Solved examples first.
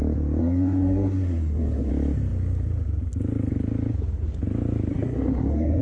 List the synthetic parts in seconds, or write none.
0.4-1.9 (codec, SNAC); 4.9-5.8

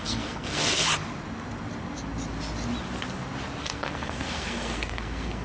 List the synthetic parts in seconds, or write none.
0.0-0.8 (codec, SNAC); 3.6-5.4

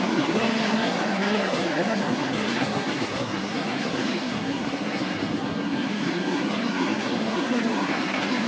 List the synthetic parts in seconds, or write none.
0.0-8.5 (codec, SNAC)

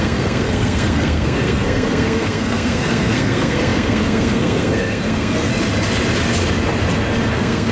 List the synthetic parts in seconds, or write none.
0.0-5.5 (codec, SNAC); 7.3-7.7